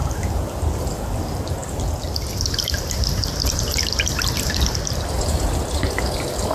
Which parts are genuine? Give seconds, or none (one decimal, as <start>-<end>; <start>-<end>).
1.6-2.6